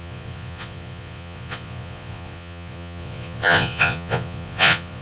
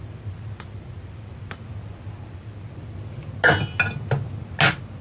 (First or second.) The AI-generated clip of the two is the first